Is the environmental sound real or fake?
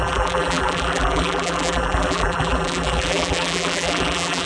fake